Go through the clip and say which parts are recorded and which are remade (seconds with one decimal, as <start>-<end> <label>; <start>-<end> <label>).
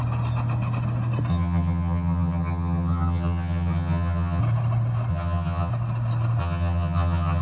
0.0-1.3 recorded; 1.3-4.4 remade; 4.4-5.1 recorded; 5.1-5.7 remade; 5.7-6.4 recorded; 6.4-7.4 remade